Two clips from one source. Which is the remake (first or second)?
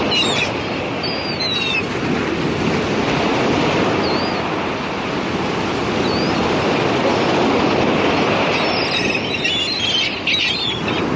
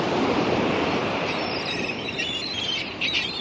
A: second